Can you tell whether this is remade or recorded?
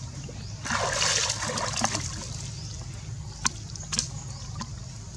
recorded